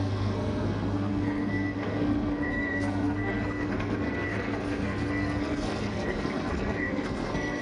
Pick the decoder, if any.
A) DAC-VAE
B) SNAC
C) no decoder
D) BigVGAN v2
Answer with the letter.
B